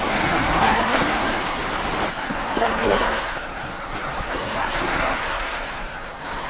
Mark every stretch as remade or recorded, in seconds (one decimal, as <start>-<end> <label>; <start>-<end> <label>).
0.0-1.6 remade; 1.6-2.1 recorded; 2.1-6.5 remade